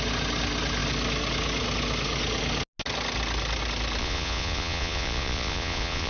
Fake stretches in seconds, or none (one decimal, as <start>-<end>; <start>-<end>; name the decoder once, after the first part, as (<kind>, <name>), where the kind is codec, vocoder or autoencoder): 4.0-6.1 (vocoder, Vocos)